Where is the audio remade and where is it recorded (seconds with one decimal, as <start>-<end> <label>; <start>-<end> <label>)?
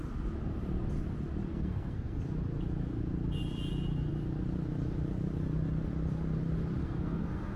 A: 0.0-1.5 recorded; 1.5-2.2 remade; 2.2-6.8 recorded; 6.8-7.6 remade